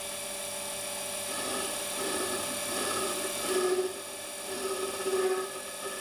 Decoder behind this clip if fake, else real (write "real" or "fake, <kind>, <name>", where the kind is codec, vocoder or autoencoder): real